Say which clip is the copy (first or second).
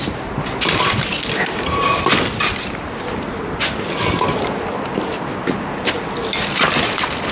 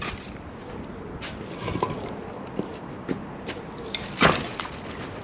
second